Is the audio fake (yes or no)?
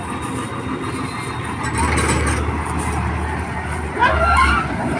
no